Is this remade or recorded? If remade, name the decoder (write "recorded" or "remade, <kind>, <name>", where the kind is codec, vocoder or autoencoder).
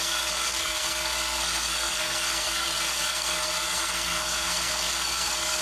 remade, codec, SNAC